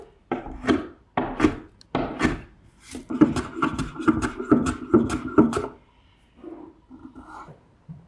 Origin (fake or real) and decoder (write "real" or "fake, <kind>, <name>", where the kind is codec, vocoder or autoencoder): real